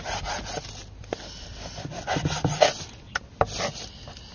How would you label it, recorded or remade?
recorded